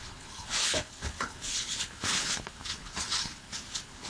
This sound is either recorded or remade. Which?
remade